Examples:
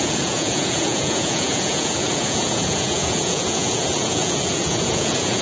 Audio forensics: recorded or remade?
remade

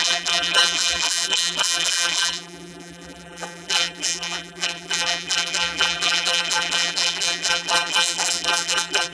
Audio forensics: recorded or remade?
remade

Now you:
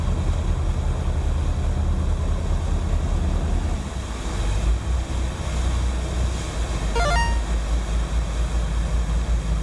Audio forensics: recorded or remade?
recorded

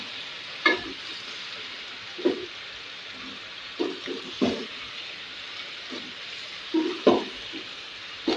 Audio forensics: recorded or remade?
remade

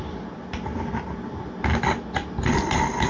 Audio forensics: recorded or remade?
recorded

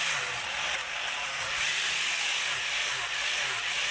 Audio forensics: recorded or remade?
recorded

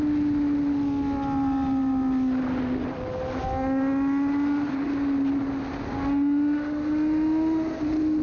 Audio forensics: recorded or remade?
recorded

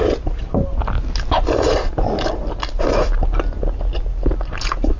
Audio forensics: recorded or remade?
recorded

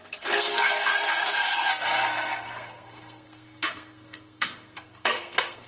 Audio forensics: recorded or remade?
remade